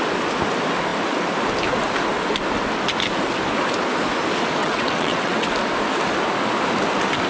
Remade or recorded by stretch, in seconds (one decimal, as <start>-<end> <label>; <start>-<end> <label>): 0.0-4.6 recorded; 4.6-5.5 remade; 5.5-7.3 recorded